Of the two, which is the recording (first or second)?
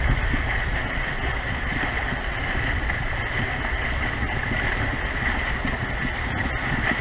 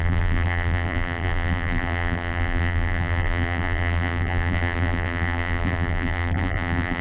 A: first